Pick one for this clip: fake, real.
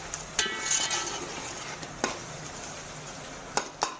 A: real